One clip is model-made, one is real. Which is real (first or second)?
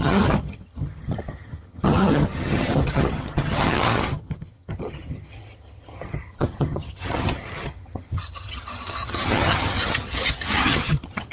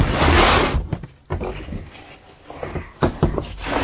second